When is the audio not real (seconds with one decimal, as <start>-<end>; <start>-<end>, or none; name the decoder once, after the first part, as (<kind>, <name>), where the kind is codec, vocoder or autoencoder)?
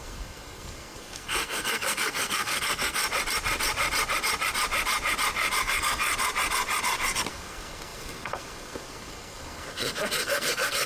0.0-3.0 (codec, SNAC); 5.6-6.1; 7.3-10.9